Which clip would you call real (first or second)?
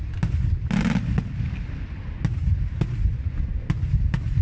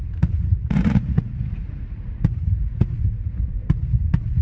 first